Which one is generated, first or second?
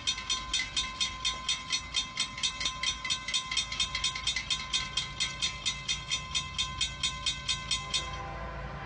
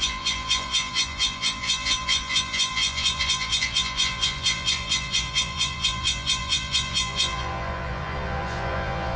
second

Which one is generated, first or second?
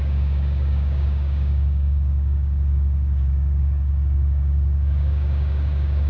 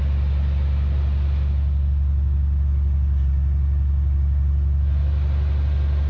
first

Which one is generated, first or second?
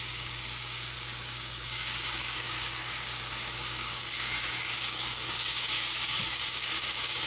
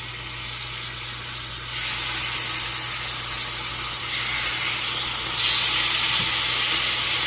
first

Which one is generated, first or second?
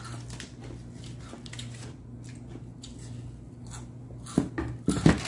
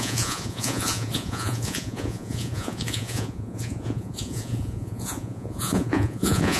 second